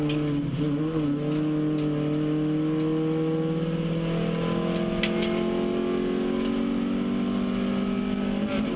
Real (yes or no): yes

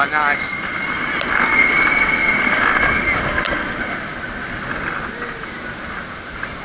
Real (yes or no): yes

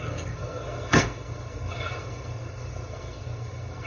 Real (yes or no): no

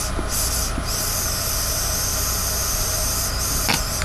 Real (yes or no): yes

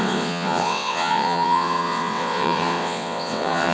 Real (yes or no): no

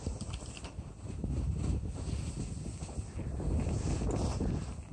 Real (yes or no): yes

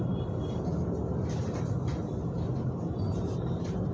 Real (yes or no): no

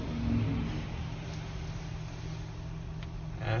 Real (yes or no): yes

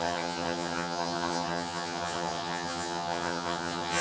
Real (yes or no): no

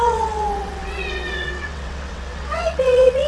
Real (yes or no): no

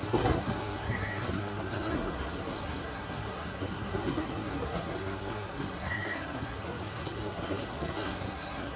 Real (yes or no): no